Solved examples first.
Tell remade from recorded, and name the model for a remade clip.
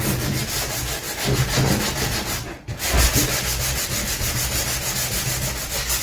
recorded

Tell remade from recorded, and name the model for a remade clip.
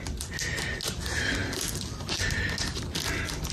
recorded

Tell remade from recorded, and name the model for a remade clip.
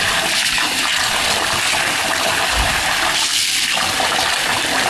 recorded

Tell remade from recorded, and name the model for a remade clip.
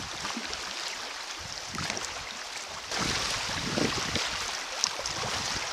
recorded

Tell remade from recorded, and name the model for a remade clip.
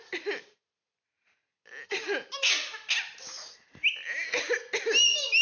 recorded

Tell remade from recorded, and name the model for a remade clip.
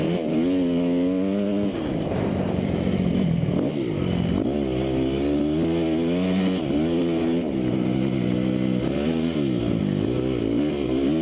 recorded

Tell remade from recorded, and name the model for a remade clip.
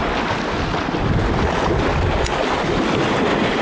recorded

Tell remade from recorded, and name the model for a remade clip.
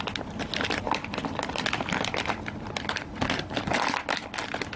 recorded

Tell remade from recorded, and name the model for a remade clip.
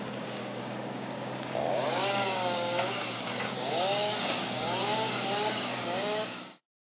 remade, codec, DAC